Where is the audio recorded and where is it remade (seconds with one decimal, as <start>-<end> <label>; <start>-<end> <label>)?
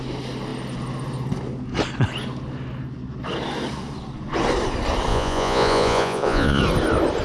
0.0-5.1 recorded; 5.1-6.6 remade; 6.6-7.2 recorded